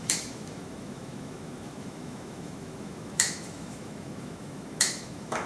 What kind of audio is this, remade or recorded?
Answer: remade